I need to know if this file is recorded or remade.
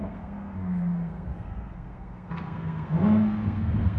remade